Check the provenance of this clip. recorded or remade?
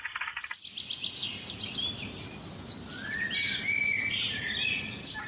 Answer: recorded